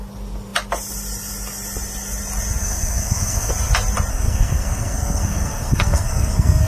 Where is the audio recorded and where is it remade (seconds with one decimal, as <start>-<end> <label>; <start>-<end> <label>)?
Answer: 0.0-2.6 recorded; 2.6-3.5 remade; 3.5-4.1 recorded; 4.1-6.7 remade